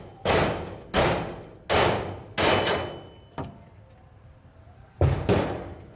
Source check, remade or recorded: recorded